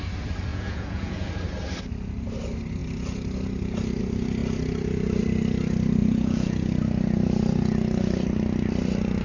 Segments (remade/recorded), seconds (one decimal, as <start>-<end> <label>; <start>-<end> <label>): 0.0-0.5 recorded; 0.5-1.3 remade; 1.3-6.0 recorded; 6.0-6.7 remade; 6.7-9.2 recorded